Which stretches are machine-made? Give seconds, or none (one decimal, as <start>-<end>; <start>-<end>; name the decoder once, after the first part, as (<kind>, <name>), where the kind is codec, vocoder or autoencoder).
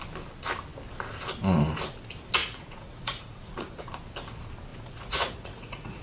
2.4-3.9 (vocoder, Vocos); 4.7-6.0